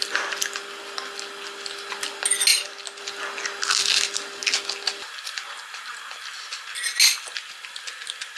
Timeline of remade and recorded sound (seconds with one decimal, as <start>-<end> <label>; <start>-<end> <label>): 0.0-8.4 recorded